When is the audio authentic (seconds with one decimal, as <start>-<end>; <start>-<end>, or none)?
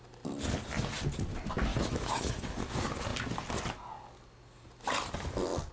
0.0-1.7; 2.5-5.7